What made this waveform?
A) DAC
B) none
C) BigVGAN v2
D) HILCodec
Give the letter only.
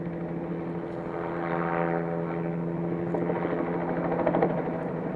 B